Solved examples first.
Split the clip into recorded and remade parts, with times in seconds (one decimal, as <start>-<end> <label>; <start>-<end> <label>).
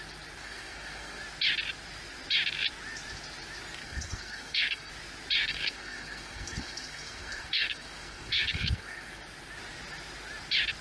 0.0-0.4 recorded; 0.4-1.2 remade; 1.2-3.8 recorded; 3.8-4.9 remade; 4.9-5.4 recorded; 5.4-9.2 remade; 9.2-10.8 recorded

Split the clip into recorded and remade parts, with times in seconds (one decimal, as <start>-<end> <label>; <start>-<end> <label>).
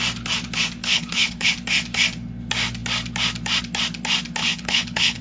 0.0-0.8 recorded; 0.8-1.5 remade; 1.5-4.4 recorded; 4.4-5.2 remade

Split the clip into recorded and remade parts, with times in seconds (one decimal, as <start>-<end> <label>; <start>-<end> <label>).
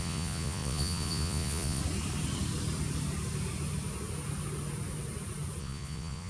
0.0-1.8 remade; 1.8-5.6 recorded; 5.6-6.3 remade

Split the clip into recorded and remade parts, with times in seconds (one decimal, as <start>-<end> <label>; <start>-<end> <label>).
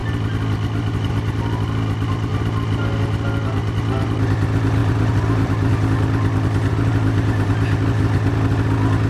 0.0-4.8 recorded; 4.8-5.7 remade; 5.7-6.7 recorded; 6.7-7.5 remade; 7.5-9.1 recorded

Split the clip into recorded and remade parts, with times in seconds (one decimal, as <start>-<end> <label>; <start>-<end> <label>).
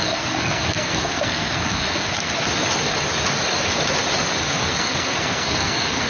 0.0-2.3 remade; 2.3-4.4 recorded; 4.4-6.1 remade